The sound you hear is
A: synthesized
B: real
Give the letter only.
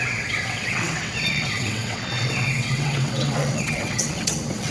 A